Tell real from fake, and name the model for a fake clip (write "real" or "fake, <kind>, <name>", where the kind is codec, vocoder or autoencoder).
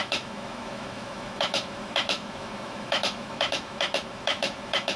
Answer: fake, autoencoder, DAC-VAE